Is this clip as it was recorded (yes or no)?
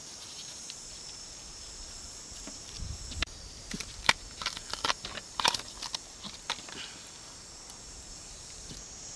no